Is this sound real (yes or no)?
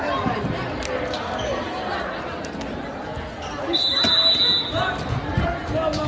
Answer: yes